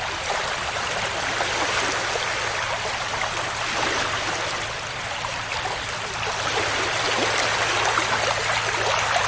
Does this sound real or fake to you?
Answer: real